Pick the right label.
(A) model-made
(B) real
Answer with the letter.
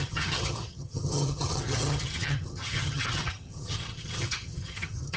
A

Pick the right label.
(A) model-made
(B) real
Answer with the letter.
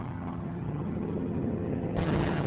A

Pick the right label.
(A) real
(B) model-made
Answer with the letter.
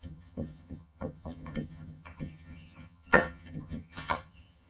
B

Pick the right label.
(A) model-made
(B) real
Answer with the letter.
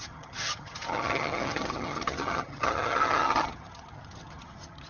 A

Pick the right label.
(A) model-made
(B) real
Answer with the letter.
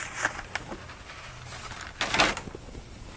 B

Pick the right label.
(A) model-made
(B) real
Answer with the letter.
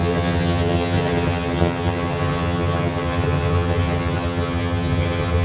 A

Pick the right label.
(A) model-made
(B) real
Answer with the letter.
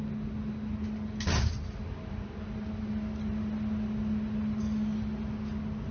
B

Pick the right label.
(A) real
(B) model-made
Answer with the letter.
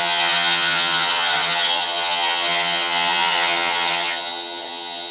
B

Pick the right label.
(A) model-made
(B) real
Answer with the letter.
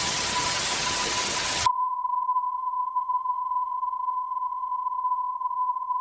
A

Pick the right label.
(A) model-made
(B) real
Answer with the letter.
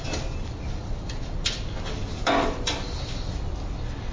B